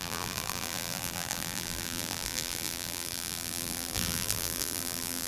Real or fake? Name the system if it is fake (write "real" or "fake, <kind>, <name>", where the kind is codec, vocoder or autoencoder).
fake, vocoder, BigVGAN v2